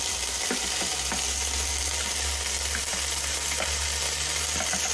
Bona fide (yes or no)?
yes